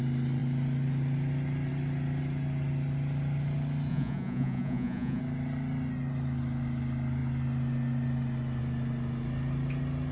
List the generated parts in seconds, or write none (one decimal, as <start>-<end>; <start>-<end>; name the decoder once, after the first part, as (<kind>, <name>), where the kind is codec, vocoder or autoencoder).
3.9-5.2 (vocoder, Vocos)